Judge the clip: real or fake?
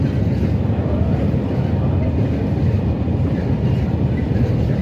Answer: real